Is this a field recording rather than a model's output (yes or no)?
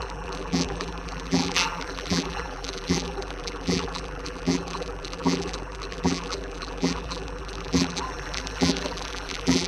no